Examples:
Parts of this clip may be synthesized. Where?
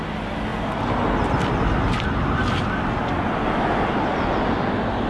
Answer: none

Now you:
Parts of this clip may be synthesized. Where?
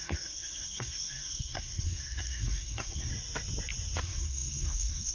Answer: 0.0-3.1 (codec, SNAC); 4.0-5.1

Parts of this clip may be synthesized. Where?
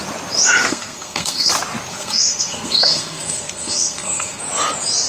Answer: 0.7-1.5 (codec, SNAC); 1.9-4.4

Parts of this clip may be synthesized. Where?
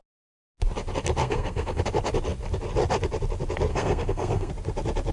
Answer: 1.2-1.8 (codec, SNAC); 3.7-4.5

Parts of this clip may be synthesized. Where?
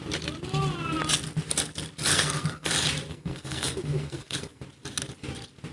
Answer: 2.1-2.7 (codec, SNAC); 3.1-4.6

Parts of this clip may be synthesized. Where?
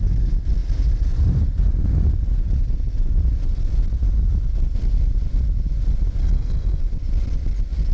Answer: 6.2-6.8 (codec, SNAC)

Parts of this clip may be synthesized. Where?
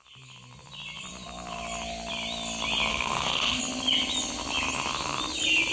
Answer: 2.9-3.6 (codec, SNAC)